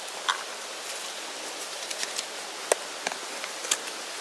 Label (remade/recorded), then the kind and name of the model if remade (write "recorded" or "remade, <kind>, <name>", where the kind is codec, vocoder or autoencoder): recorded